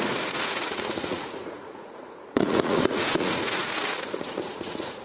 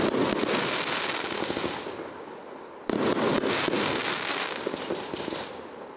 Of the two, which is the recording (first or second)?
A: second